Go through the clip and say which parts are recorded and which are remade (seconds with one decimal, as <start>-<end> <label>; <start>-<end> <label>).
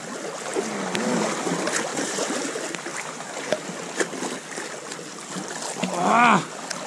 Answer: 0.0-1.9 recorded; 1.9-2.5 remade; 2.5-2.9 recorded; 2.9-3.5 remade; 3.5-6.9 recorded